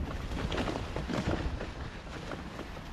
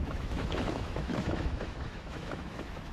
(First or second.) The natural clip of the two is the first